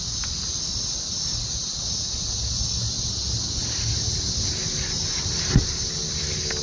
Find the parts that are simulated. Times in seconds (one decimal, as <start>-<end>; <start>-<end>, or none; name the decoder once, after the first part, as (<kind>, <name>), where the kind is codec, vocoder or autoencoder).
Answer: none